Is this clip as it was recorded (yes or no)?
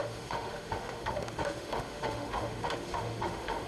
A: no